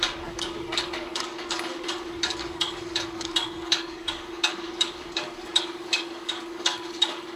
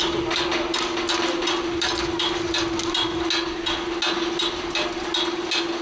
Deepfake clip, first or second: first